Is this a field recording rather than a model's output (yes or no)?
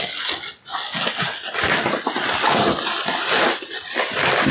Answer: yes